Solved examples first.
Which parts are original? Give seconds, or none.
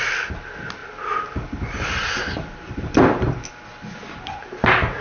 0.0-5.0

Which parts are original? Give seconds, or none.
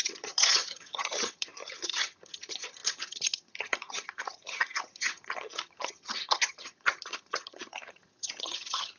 none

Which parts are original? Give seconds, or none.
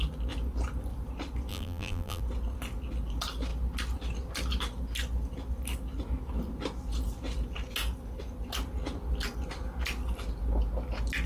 0.0-1.5; 2.2-11.3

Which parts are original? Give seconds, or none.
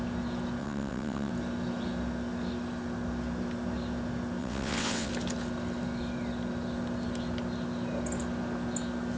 0.0-0.6; 1.3-4.4; 5.1-9.2